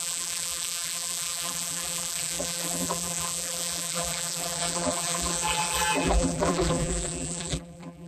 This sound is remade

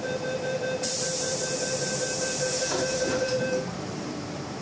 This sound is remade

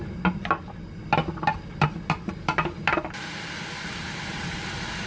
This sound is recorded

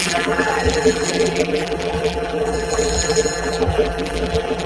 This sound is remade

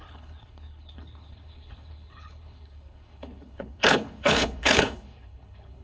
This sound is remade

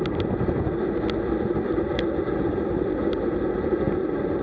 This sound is recorded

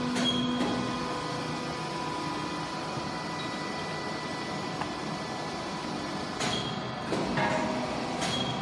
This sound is recorded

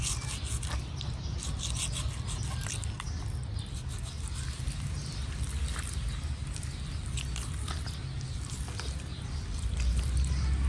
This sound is recorded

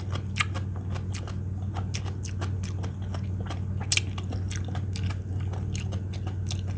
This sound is recorded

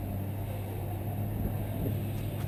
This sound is recorded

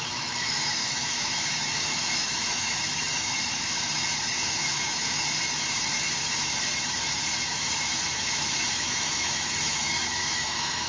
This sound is remade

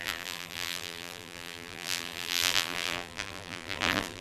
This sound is remade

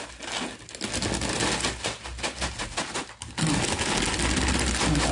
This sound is recorded